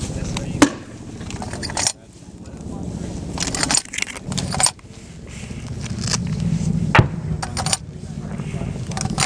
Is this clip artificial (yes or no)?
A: no